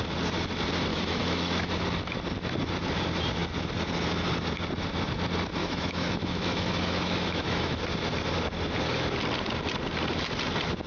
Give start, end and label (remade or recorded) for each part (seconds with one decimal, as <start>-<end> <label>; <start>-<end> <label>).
0.0-0.9 recorded; 0.9-1.7 remade; 1.7-5.6 recorded; 5.6-7.8 remade; 7.8-10.9 recorded